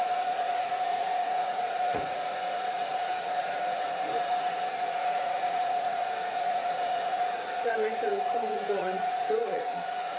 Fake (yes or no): yes